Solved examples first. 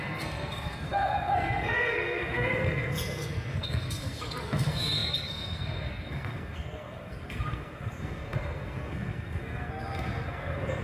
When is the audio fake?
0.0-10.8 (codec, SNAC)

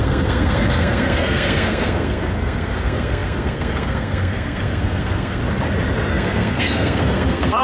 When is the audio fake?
0.0-5.4 (codec, SNAC); 6.1-7.6